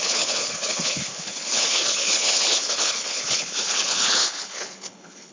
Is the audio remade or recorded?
remade